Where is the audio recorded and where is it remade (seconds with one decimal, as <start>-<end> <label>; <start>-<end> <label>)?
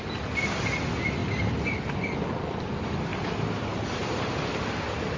0.0-5.2 recorded